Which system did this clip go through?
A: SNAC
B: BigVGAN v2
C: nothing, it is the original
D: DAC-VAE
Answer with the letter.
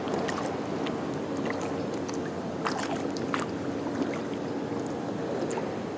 C